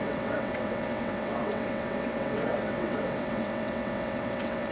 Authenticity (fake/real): fake